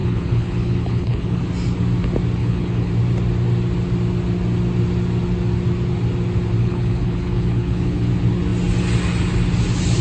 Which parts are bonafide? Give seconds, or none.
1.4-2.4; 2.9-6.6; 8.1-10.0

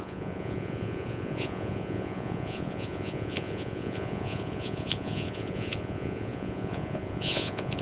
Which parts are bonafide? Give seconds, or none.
none